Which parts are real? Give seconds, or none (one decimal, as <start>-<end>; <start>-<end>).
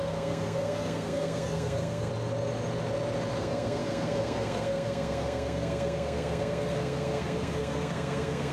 2.1-3.4